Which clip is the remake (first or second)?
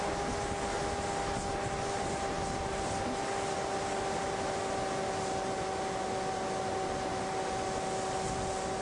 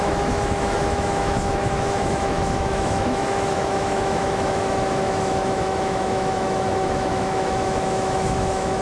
second